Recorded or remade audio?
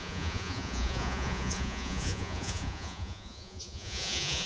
remade